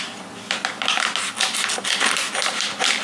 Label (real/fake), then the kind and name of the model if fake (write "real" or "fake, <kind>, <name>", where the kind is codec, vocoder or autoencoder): real